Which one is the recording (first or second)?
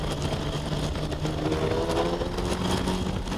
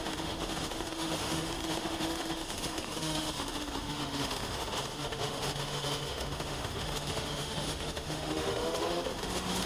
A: first